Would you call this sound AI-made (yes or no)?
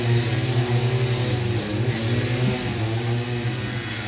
no